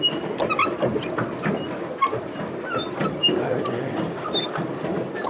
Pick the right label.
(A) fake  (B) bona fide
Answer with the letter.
B